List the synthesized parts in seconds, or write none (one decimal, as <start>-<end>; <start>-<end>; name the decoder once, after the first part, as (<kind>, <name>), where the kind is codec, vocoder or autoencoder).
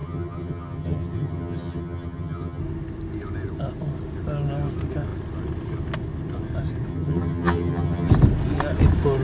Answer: 0.0-2.6 (vocoder, HiFi-GAN); 6.9-8.1